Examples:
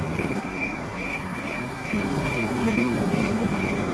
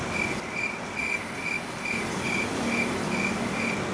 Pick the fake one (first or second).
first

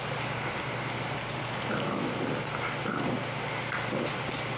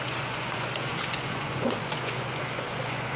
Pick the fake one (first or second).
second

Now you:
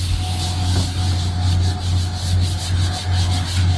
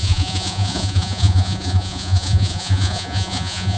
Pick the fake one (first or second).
second